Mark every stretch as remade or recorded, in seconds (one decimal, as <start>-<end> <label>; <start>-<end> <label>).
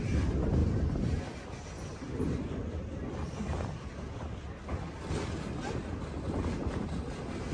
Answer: 0.0-7.5 recorded